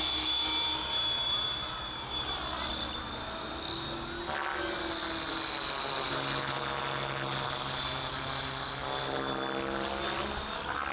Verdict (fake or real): real